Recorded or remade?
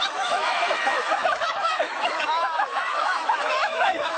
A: remade